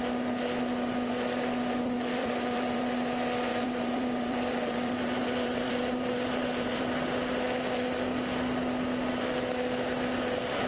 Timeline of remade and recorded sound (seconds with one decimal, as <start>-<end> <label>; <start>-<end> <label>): 0.0-2.1 recorded; 2.1-2.8 remade; 2.8-3.5 recorded; 3.5-6.8 remade; 6.8-10.7 recorded